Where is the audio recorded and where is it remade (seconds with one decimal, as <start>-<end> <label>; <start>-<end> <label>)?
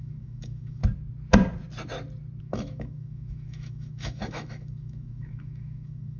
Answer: 0.0-0.8 remade; 0.8-2.4 recorded; 2.4-6.2 remade